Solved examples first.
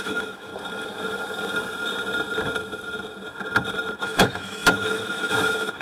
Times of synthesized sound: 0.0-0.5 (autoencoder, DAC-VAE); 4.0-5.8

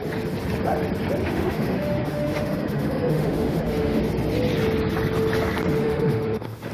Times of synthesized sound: 1.2-4.0 (autoencoder, DAC-VAE); 5.8-6.7

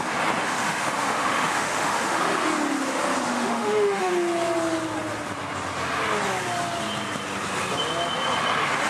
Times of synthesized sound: 0.4-2.2 (autoencoder, DAC-VAE); 3.3-4.1

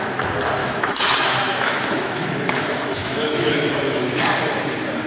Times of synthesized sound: 0.6-3.7 (autoencoder, DAC-VAE)

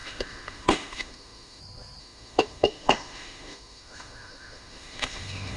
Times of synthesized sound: 0.0-1.6 (autoencoder, DAC-VAE); 2.0-5.6

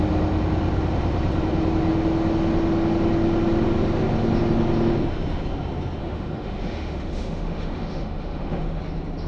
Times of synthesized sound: 6.0-8.8 (autoencoder, DAC-VAE)

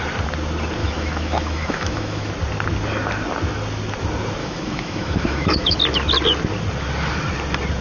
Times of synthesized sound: 0.8-2.3 (autoencoder, DAC-VAE); 4.4-5.8